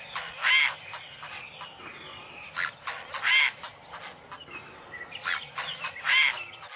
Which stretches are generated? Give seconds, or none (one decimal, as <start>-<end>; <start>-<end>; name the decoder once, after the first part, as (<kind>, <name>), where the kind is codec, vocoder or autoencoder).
none